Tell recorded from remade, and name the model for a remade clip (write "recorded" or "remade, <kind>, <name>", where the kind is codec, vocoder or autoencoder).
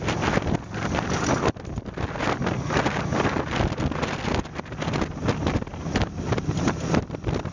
recorded